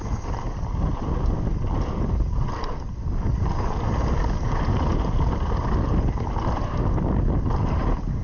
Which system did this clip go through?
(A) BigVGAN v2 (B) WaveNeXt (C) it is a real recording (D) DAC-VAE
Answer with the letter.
C